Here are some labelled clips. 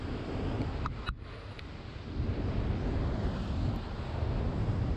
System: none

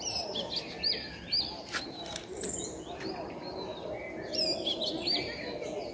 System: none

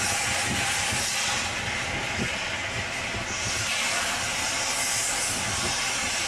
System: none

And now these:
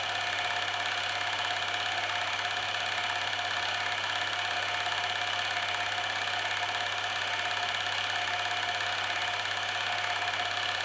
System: none